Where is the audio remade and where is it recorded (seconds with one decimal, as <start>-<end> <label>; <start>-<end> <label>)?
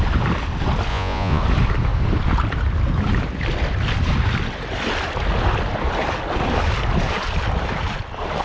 0.0-0.9 recorded; 0.9-1.4 remade; 1.4-8.4 recorded